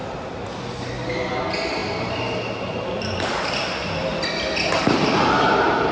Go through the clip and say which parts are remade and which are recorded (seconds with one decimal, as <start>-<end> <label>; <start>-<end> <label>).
0.0-5.9 recorded